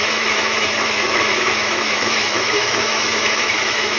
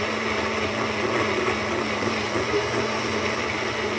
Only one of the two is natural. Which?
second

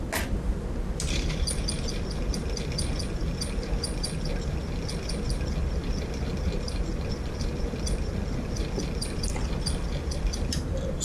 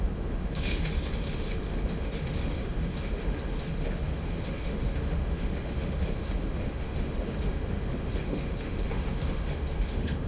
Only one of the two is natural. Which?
first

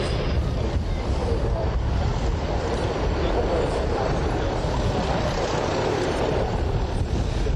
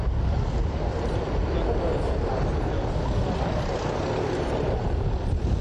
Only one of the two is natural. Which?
second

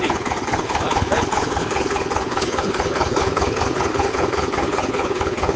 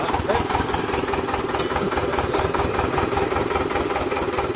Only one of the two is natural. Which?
second